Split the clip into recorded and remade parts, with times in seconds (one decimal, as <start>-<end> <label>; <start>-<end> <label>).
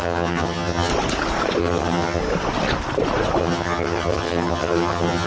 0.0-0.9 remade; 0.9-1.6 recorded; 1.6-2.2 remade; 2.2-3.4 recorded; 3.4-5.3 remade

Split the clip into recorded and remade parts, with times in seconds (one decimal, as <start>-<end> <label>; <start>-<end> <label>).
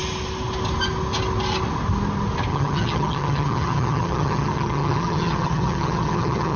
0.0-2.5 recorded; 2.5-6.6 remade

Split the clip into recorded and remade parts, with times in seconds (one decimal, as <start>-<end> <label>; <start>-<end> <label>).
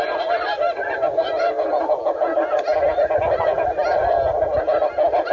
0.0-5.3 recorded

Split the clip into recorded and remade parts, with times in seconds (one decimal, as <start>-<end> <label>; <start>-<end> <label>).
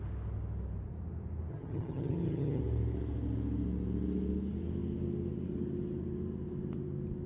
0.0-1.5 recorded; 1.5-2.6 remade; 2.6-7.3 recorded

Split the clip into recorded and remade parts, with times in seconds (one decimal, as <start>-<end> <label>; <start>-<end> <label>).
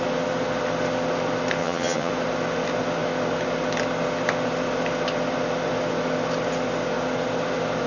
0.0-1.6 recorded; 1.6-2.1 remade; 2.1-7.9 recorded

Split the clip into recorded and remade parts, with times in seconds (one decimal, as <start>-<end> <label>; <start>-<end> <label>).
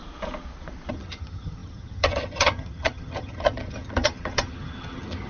0.0-0.9 recorded; 0.9-5.3 remade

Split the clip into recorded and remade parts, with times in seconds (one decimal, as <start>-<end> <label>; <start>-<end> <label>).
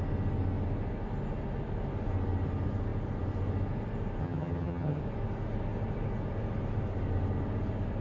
0.0-4.2 recorded; 4.2-5.0 remade; 5.0-8.0 recorded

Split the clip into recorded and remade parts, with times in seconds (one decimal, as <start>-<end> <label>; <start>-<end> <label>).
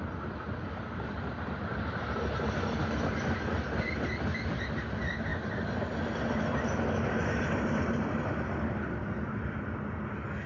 0.0-10.5 recorded